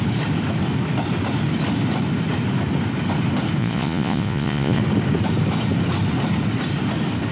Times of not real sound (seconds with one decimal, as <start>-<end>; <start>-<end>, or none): 3.6-4.8